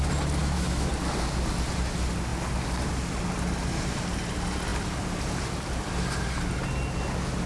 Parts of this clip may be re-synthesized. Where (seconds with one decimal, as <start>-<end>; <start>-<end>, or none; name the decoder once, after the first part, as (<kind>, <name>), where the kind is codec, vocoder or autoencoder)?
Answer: 0.4-0.9 (autoencoder, DAC-VAE)